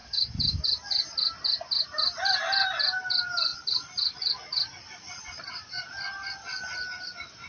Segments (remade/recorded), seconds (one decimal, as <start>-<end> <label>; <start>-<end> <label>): 0.0-0.6 remade; 0.6-7.5 recorded